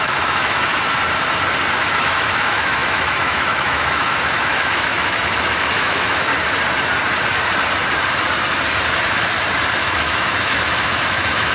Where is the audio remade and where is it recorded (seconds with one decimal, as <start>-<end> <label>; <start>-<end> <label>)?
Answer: 0.0-0.7 remade; 0.7-1.8 recorded; 1.8-6.3 remade; 6.3-9.7 recorded; 9.7-11.5 remade